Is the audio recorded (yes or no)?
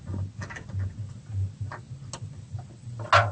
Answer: yes